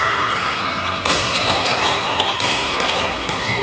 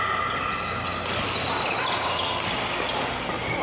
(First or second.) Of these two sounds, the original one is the second